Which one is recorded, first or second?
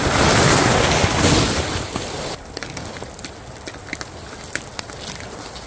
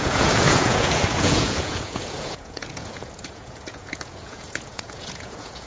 first